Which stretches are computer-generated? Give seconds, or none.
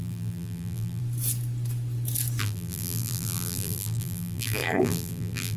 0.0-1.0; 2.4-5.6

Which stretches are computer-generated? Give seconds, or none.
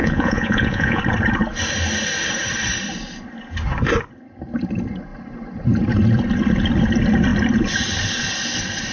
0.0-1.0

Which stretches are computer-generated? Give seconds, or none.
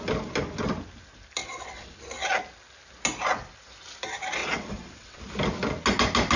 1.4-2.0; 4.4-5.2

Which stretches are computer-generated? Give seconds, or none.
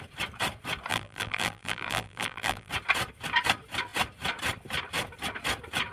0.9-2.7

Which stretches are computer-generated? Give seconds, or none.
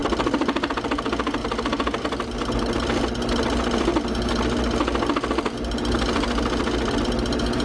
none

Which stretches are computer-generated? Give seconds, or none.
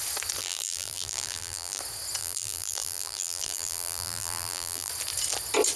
0.4-1.8; 2.2-4.9